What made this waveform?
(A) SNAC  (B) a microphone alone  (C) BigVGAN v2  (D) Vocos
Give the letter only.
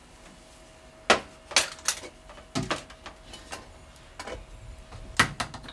B